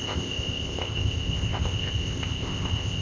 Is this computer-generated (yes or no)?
yes